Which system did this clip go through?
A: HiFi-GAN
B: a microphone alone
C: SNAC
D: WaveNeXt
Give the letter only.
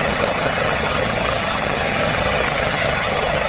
A